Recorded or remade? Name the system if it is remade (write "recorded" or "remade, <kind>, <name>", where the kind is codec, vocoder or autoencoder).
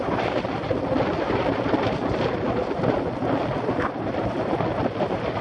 recorded